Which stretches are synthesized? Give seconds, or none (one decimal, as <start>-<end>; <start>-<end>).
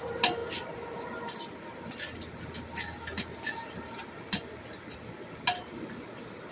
none